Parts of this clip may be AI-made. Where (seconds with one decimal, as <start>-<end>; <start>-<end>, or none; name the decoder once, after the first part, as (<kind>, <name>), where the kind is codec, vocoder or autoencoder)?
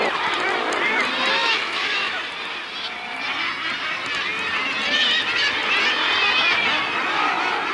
1.4-2.2 (autoencoder, DAC-VAE)